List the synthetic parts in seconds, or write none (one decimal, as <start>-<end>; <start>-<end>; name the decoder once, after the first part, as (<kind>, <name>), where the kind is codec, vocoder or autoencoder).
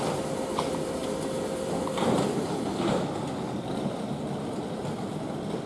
none